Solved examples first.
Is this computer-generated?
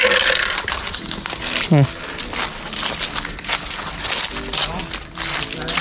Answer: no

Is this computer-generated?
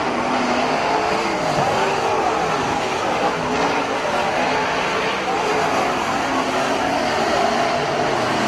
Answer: no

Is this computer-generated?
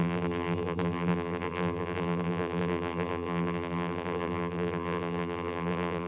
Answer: yes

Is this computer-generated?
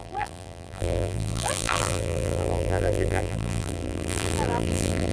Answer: yes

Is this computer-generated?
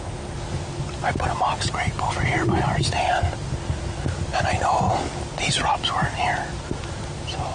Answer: no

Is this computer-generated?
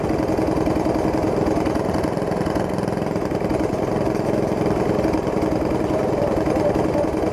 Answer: no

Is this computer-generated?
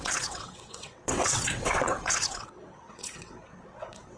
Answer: yes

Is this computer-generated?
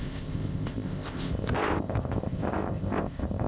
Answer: yes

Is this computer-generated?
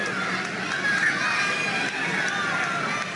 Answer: no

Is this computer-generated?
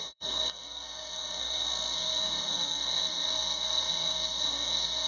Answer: yes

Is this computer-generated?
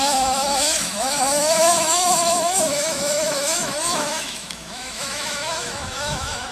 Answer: yes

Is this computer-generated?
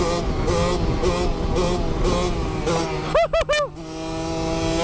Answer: no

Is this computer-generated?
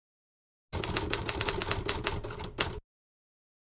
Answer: no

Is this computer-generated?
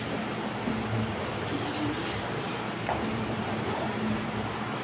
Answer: yes